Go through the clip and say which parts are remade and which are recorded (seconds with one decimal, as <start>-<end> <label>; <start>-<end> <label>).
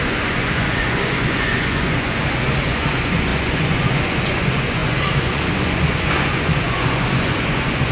0.0-7.9 remade